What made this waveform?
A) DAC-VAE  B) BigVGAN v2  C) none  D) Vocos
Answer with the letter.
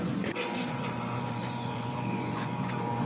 D